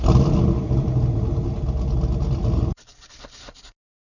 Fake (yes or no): no